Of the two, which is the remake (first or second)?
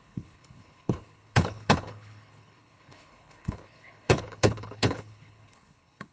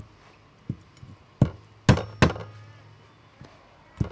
first